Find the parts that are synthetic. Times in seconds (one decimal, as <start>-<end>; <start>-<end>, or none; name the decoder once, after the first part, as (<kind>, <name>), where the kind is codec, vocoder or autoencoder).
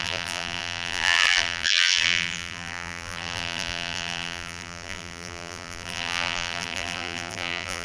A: 0.0-7.8 (vocoder, BigVGAN v2)